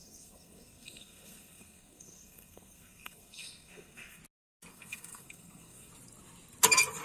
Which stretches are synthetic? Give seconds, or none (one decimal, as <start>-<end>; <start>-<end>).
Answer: 0.0-4.2; 4.7-5.9

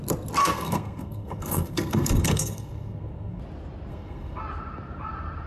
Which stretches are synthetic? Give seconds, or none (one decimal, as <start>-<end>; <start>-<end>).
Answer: 0.4-3.4; 3.9-4.4

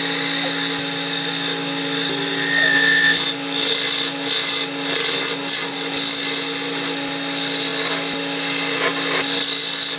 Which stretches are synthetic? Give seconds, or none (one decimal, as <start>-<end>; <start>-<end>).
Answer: none

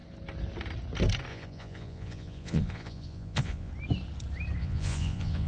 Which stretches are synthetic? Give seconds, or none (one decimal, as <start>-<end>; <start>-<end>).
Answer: 1.3-3.7; 4.6-5.5